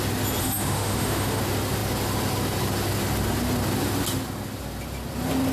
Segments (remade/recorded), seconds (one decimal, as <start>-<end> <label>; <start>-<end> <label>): 0.0-0.4 recorded; 0.4-1.4 remade; 1.4-5.5 recorded